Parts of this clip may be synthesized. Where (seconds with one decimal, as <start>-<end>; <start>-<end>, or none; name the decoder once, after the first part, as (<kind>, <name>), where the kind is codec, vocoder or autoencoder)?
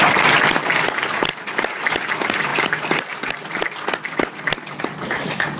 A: none